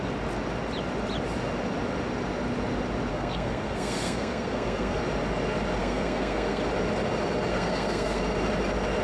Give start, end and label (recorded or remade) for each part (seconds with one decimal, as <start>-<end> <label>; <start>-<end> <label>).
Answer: 0.0-3.1 recorded; 3.1-5.0 remade; 5.0-5.8 recorded; 5.8-6.6 remade; 6.6-7.5 recorded; 7.5-8.2 remade; 8.2-9.0 recorded